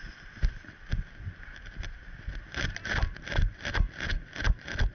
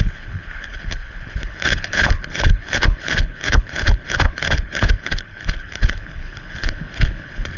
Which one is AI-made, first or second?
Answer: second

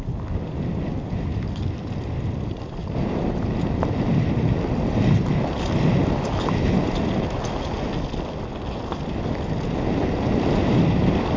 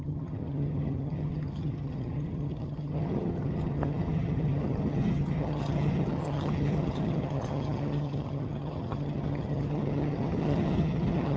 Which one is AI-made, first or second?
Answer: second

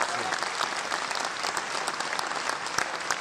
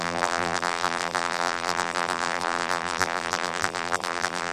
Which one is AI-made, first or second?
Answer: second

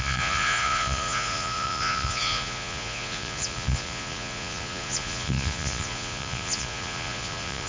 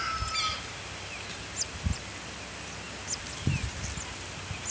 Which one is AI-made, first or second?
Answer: first